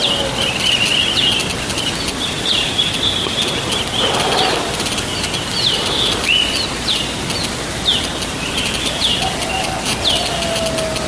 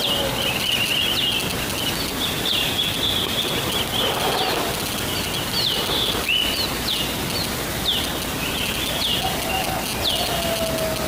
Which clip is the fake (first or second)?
first